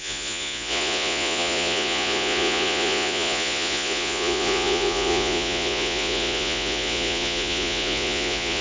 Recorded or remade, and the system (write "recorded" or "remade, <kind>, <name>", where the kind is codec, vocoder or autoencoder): remade, vocoder, Vocos